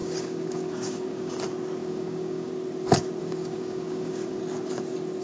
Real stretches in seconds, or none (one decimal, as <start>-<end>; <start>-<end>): 1.3-1.8; 2.5-3.2; 4.4-5.2